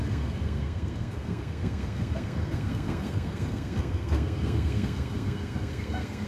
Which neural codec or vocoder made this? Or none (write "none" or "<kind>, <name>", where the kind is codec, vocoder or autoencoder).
codec, SNAC